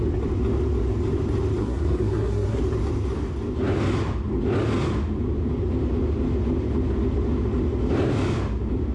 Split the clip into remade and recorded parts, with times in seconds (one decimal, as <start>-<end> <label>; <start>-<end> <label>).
0.0-1.6 recorded; 1.6-2.6 remade; 2.6-8.9 recorded